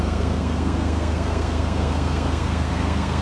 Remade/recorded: remade